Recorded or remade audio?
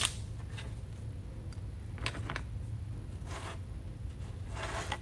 recorded